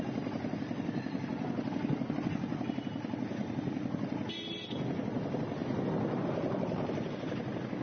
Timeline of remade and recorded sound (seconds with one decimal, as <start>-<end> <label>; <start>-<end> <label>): 0.0-7.8 recorded